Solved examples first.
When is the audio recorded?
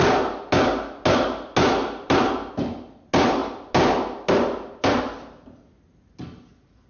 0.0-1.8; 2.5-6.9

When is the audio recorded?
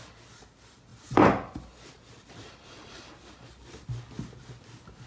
0.0-0.9; 4.0-5.1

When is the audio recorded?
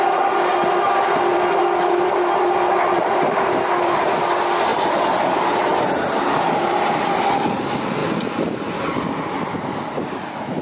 0.0-1.3; 4.2-4.7; 7.0-8.0; 8.8-10.6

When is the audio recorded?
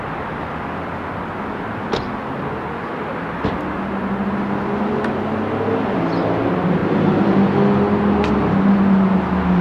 0.0-9.6